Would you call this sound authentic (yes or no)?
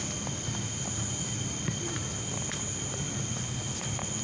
yes